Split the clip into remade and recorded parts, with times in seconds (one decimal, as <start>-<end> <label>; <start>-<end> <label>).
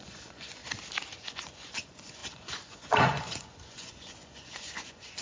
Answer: 0.0-0.6 remade; 0.6-1.2 recorded; 1.2-5.2 remade